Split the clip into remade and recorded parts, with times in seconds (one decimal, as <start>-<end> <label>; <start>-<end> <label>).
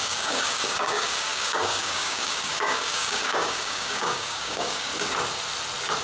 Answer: 0.0-4.9 remade; 4.9-6.0 recorded